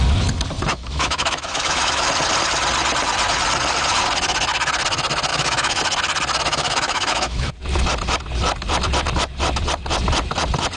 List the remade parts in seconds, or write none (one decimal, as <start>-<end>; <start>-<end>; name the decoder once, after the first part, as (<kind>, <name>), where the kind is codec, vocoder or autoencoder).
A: 0.7-2.1 (autoencoder, DAC-VAE); 5.3-5.8; 6.5-7.5